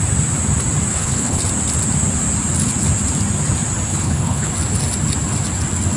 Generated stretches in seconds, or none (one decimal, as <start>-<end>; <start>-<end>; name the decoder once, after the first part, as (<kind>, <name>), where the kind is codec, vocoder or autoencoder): 0.9-1.4 (codec, HILCodec); 3.9-4.5